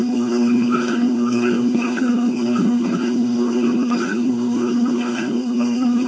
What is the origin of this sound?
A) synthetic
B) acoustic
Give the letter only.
A